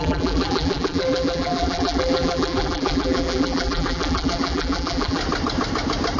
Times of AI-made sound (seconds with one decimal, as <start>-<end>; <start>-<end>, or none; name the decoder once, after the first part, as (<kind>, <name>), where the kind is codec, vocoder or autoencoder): 0.0-5.2 (vocoder, BigVGAN v2)